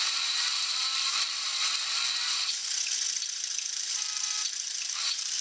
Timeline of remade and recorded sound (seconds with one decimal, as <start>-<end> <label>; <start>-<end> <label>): 0.0-1.5 remade; 1.5-2.2 recorded; 2.2-2.6 remade; 2.6-3.2 recorded; 3.2-5.4 remade